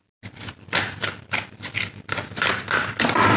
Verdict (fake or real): real